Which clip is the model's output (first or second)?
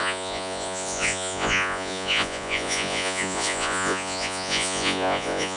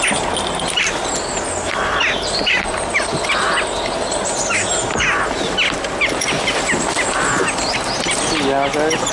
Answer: first